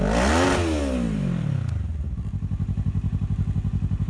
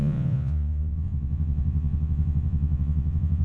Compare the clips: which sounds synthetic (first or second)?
second